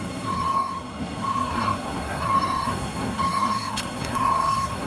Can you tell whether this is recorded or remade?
remade